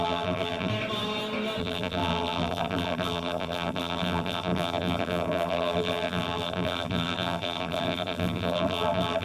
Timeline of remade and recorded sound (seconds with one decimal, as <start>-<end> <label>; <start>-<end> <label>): 0.0-0.7 remade; 0.7-1.6 recorded; 1.6-9.2 remade